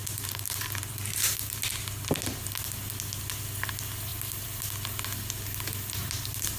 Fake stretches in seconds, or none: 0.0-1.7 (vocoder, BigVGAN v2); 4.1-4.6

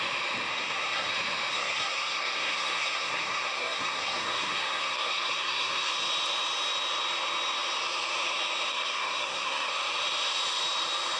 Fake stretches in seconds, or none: 0.5-1.1 (codec, SNAC); 1.5-5.9; 8.7-9.7

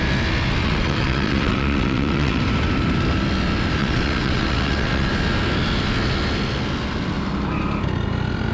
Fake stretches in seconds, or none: 0.6-2.4 (vocoder, WaveNeXt); 3.8-5.1

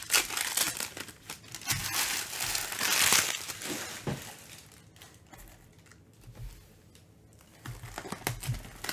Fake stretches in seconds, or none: none

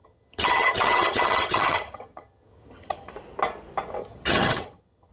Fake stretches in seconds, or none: 0.0-3.1 (vocoder, HiFi-GAN); 4.0-5.1